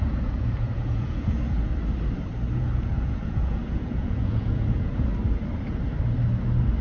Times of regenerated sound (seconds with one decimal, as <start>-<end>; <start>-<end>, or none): 0.0-1.7; 2.5-5.1